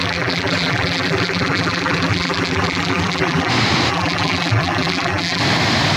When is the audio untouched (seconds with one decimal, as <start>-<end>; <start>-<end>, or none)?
3.5-3.9; 5.4-6.0

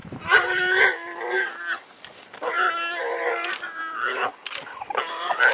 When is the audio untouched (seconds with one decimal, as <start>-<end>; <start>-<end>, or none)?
1.5-3.0; 3.8-5.5

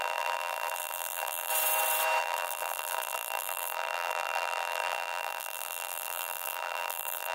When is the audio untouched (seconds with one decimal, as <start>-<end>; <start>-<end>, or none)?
1.5-2.2

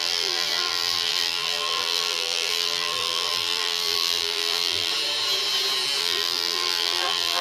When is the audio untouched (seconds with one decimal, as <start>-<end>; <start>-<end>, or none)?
4.9-6.0